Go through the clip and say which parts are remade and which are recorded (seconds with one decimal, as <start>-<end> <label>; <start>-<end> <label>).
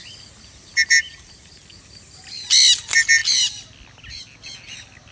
0.0-5.1 recorded